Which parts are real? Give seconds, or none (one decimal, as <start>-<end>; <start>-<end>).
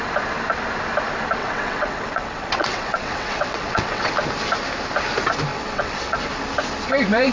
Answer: 0.0-1.4; 4.1-5.5; 6.3-7.3